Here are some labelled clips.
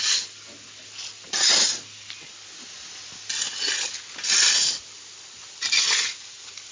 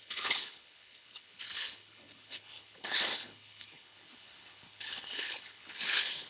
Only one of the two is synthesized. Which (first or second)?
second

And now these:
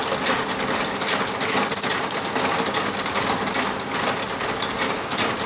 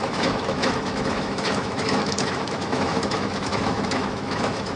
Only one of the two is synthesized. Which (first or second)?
second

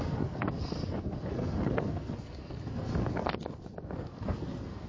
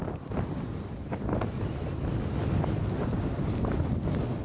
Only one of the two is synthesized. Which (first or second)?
first